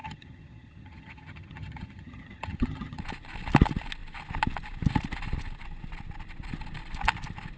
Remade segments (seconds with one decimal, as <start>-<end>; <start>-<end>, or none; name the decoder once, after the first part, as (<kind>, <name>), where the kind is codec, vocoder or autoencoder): 0.0-3.0 (vocoder, HiFi-GAN)